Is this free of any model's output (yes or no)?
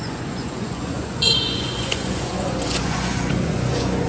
no